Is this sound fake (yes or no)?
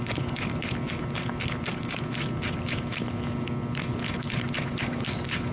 no